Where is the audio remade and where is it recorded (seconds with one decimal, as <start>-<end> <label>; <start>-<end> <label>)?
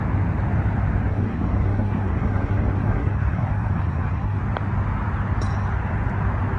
0.0-1.1 recorded; 1.1-4.4 remade; 4.4-6.6 recorded